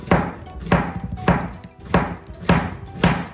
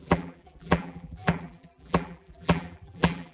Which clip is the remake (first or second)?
second